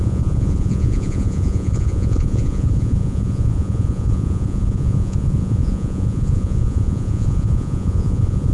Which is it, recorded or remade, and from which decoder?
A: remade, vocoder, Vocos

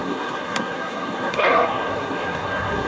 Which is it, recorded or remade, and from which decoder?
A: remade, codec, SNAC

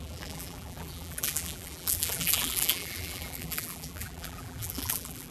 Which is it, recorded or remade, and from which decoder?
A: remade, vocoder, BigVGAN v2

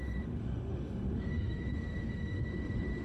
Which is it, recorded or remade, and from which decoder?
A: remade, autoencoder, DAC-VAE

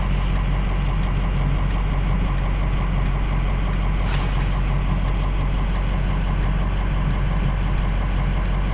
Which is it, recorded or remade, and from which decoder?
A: recorded